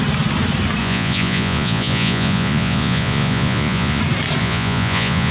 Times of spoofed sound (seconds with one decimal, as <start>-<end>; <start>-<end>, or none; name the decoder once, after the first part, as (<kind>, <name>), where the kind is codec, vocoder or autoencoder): 0.8-4.0 (vocoder, Vocos); 4.4-5.3